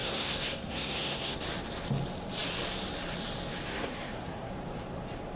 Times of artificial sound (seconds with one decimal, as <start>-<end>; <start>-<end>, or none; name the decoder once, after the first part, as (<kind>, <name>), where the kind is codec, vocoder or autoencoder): 0.0-1.4 (codec, SNAC); 3.7-4.5